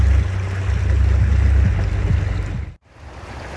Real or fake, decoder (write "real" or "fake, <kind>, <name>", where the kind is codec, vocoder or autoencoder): real